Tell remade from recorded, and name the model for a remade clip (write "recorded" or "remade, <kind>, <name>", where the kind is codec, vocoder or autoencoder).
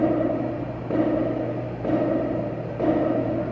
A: recorded